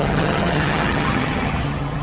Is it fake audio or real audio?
fake